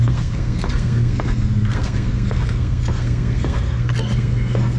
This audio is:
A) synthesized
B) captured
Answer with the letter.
A